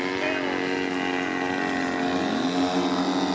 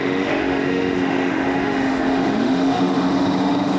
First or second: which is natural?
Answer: first